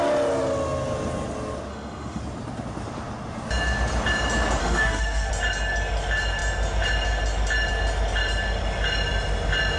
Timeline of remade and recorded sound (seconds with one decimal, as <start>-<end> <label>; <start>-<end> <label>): 0.0-1.7 recorded; 1.7-2.2 remade; 2.2-4.6 recorded; 4.6-5.3 remade; 5.3-9.8 recorded

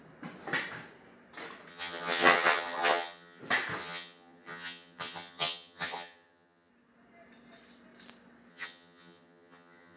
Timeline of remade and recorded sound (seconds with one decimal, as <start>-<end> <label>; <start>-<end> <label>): 0.0-1.7 recorded; 1.7-3.4 remade; 3.4-3.8 recorded; 3.8-6.7 remade; 6.7-8.5 recorded; 8.5-10.0 remade

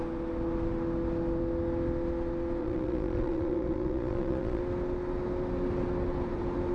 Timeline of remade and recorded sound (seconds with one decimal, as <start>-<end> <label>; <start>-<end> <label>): 0.0-2.6 recorded; 2.6-4.6 remade; 4.6-6.7 recorded

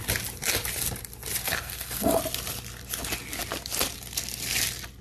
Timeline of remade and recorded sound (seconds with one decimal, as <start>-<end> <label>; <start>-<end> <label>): 0.0-1.4 recorded; 1.4-2.2 remade; 2.2-5.0 recorded

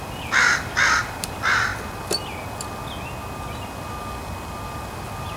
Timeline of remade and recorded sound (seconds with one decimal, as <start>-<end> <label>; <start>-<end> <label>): 0.0-1.7 remade; 1.7-4.9 recorded; 4.9-5.4 remade